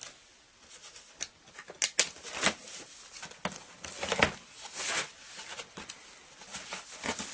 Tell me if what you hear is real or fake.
real